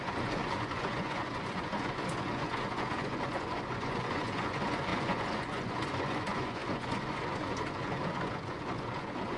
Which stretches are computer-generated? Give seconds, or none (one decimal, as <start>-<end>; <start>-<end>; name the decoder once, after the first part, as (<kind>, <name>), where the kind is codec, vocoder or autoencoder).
0.0-9.4 (vocoder, Vocos)